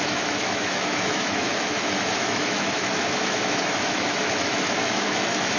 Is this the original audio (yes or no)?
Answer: no